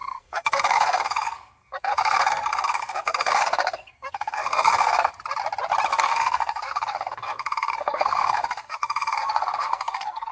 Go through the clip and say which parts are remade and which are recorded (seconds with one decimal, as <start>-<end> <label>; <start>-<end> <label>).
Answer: 0.0-5.1 remade; 5.1-5.9 recorded; 5.9-10.3 remade